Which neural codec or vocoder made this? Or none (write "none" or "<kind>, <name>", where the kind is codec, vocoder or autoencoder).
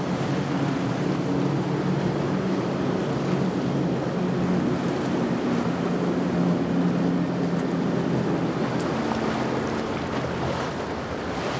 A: none